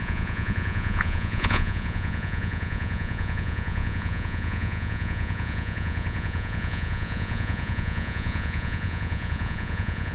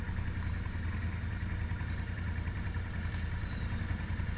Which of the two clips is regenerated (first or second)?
first